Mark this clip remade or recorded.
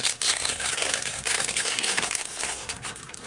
remade